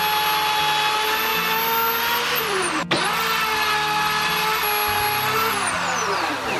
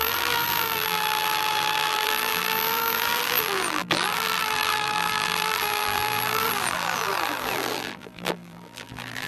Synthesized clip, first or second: second